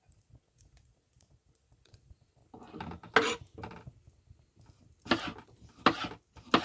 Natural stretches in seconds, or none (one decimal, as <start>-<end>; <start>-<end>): 2.4-6.6